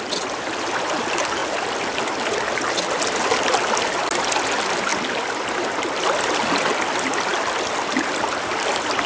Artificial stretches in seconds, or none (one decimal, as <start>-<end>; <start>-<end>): none

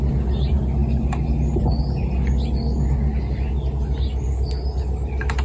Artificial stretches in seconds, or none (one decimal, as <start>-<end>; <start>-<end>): none

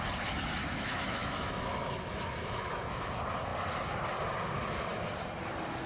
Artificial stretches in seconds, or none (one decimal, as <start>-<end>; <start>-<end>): 0.6-3.1

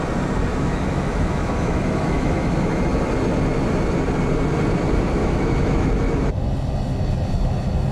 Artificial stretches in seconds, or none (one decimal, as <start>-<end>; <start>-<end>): 0.5-2.8; 5.2-5.9

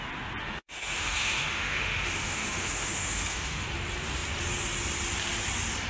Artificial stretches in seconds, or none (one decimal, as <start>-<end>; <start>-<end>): 0.4-3.6